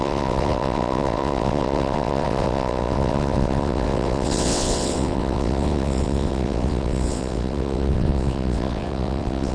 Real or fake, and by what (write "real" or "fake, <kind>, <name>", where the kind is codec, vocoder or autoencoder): fake, vocoder, WaveNeXt